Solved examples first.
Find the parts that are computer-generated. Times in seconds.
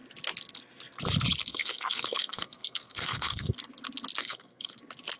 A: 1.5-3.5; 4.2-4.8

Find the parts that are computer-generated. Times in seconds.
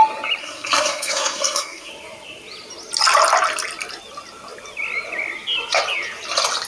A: 0.4-1.9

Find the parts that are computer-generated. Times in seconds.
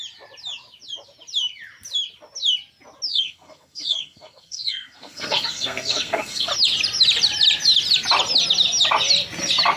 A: 3.1-6.5